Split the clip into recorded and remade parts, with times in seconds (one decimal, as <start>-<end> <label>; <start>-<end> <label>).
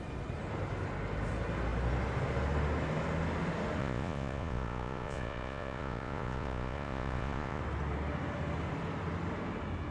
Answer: 0.0-3.8 recorded; 3.8-7.6 remade; 7.6-9.9 recorded